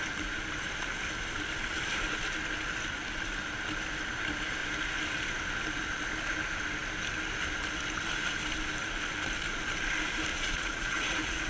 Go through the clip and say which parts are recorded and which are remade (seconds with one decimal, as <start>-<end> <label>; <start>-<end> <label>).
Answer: 0.0-10.3 recorded; 10.3-11.5 remade